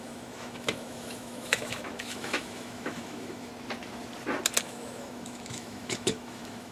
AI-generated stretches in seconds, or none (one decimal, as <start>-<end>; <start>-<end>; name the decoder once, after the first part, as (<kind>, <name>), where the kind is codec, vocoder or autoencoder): 0.0-3.5 (autoencoder, DAC-VAE); 4.6-6.7